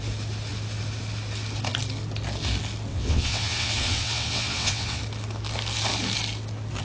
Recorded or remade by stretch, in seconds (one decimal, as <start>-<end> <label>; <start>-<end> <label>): 0.0-2.9 recorded; 2.9-5.0 remade; 5.0-6.8 recorded